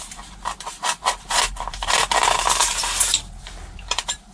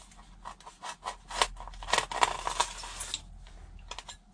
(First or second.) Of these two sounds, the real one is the second